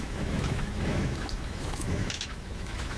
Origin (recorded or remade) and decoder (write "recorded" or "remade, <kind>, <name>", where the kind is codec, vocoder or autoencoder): remade, autoencoder, DAC-VAE